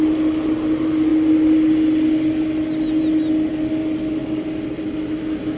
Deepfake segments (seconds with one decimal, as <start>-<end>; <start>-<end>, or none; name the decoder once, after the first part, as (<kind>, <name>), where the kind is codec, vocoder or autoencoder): none